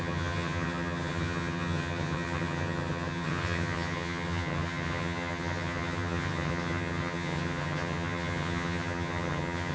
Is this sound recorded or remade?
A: remade